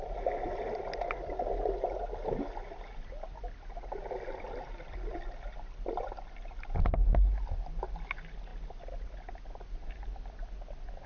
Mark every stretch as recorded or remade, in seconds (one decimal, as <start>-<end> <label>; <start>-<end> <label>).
0.0-11.1 recorded